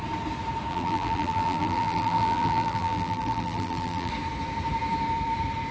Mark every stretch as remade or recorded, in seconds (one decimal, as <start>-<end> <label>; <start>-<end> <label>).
0.0-0.7 recorded; 0.7-4.1 remade; 4.1-5.7 recorded